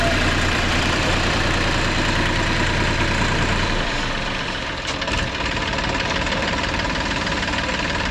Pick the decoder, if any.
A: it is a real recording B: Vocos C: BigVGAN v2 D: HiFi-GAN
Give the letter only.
C